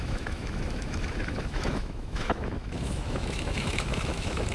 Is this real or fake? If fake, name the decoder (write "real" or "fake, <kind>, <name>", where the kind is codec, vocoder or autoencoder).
fake, autoencoder, DAC-VAE